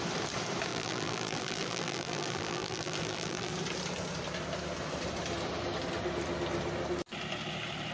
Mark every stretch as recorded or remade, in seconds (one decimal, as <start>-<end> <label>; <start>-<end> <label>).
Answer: 0.0-0.7 recorded; 0.7-3.5 remade; 3.5-7.9 recorded